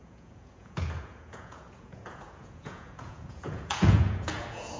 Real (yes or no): no